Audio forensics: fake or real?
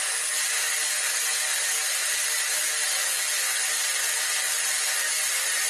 real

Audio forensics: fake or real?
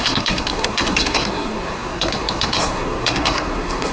fake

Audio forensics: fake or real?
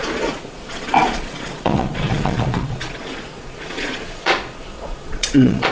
fake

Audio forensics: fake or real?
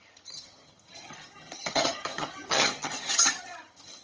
fake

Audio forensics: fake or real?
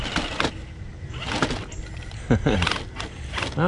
real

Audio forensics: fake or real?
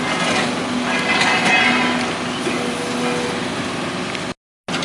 real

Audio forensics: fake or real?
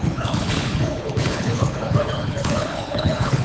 fake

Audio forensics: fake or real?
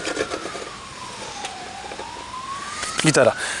real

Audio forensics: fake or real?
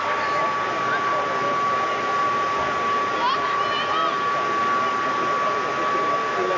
real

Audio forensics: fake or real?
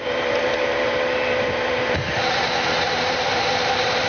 fake